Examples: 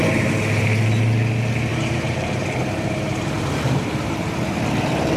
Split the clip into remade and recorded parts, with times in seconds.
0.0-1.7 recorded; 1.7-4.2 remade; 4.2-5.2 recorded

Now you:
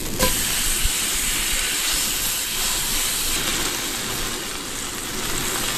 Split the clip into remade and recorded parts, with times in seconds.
0.0-0.8 recorded; 0.8-2.0 remade; 2.0-5.8 recorded